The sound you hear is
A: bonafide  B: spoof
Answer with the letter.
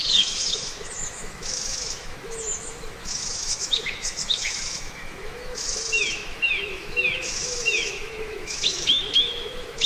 B